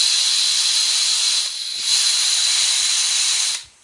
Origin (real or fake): real